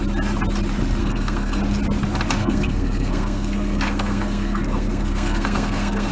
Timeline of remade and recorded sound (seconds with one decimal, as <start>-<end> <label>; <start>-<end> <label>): 0.0-1.0 recorded; 1.0-1.6 remade; 1.6-2.4 recorded; 2.4-6.1 remade